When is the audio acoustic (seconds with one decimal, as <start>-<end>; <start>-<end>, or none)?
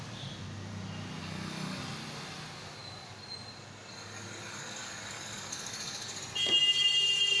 0.0-1.2; 1.8-3.9; 6.2-7.4